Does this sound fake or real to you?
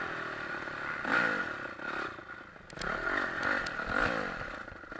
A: real